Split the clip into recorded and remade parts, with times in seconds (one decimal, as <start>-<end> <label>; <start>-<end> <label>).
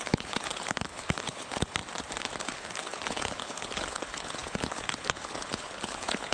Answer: 0.0-1.8 remade; 1.8-2.4 recorded; 2.4-6.3 remade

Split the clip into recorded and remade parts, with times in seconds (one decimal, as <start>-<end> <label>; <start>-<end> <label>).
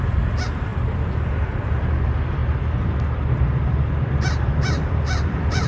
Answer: 0.0-2.4 remade; 2.4-4.9 recorded; 4.9-5.7 remade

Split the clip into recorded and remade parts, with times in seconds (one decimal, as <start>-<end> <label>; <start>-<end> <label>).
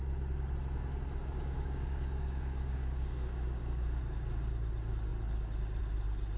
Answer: 0.0-1.2 recorded; 1.2-4.0 remade; 4.0-6.4 recorded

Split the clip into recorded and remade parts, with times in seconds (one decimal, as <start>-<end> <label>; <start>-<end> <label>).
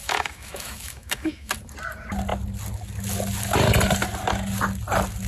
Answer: 0.0-1.5 remade; 1.5-5.3 recorded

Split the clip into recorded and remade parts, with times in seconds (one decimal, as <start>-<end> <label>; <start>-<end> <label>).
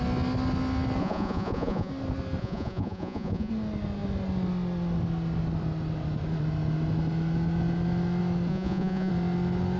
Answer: 0.0-1.0 recorded; 1.0-1.9 remade; 1.9-2.4 recorded; 2.4-3.5 remade; 3.5-8.5 recorded; 8.5-9.1 remade; 9.1-9.8 recorded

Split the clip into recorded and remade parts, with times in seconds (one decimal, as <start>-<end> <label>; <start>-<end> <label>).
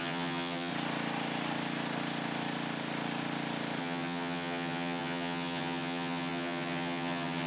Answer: 0.0-0.7 remade; 0.7-3.8 recorded; 3.8-7.5 remade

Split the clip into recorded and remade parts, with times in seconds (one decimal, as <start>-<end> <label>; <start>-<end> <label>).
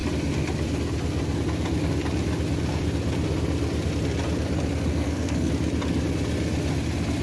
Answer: 0.0-4.9 recorded; 4.9-5.5 remade; 5.5-7.2 recorded